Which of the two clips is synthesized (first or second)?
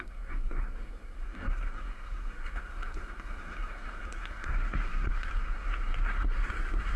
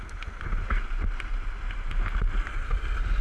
first